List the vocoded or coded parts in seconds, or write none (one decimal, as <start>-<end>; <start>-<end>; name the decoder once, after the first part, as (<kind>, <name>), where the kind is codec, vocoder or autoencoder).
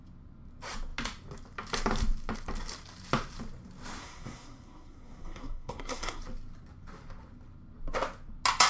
4.0-6.2 (codec, SNAC)